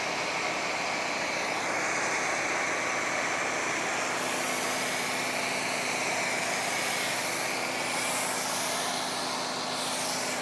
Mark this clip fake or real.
real